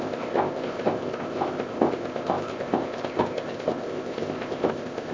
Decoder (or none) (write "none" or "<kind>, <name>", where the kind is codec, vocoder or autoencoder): codec, ZipCodec